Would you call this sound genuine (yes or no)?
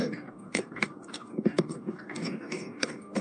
no